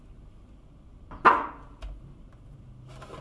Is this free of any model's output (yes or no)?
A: yes